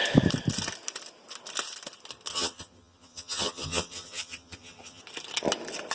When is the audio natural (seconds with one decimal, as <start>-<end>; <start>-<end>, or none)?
0.0-2.3; 5.0-5.9